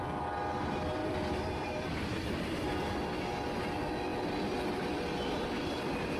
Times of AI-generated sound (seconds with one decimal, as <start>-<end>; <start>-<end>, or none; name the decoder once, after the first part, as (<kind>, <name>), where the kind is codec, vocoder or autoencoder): 1.0-3.1 (vocoder, BigVGAN v2)